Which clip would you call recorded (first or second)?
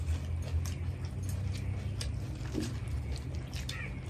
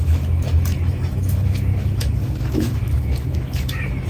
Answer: first